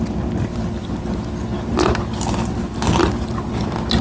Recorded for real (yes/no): yes